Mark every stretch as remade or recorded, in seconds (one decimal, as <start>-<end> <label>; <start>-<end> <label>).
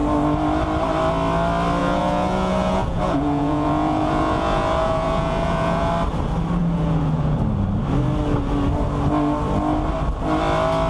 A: 0.0-1.8 recorded; 1.8-5.9 remade; 5.9-6.6 recorded; 6.6-7.4 remade; 7.4-10.9 recorded